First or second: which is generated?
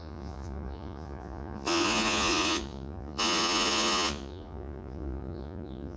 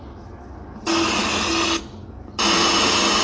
first